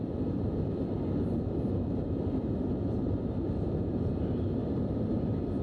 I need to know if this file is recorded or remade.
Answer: remade